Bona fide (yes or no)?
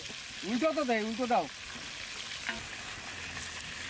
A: yes